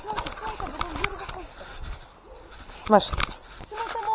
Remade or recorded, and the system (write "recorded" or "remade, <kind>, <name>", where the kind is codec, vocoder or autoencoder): recorded